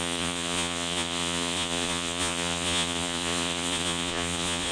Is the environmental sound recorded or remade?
remade